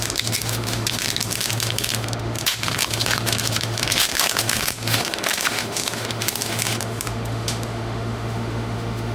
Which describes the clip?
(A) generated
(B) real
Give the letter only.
A